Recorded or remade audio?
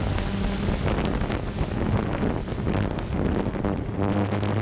recorded